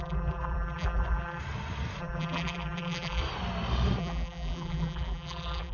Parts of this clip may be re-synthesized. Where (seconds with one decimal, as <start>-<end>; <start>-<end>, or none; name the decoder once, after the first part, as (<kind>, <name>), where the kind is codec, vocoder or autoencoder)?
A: 0.0-1.4 (vocoder, BigVGAN v2); 2.0-3.2; 4.0-5.7